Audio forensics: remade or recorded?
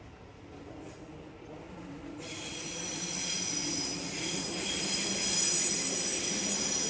recorded